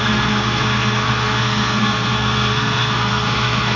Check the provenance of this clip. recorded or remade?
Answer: remade